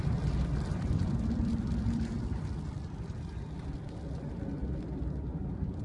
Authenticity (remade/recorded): remade